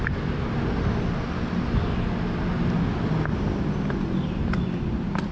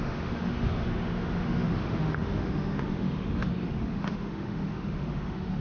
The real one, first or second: first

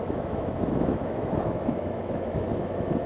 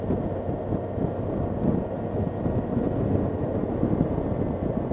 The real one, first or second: second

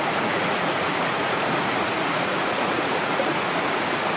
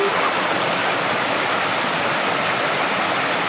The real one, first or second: second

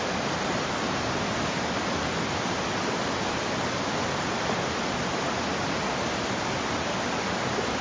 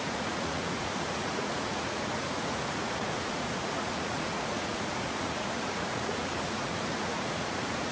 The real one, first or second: first